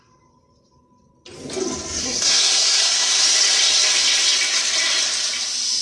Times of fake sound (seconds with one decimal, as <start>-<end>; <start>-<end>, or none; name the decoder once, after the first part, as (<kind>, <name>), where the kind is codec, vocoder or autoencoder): 2.0-3.2 (codec, SNAC)